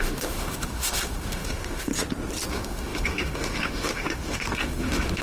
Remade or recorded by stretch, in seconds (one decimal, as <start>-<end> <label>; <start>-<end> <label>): 0.0-1.9 remade; 1.9-2.5 recorded; 2.5-5.2 remade